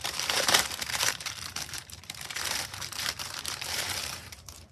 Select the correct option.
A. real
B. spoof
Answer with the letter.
B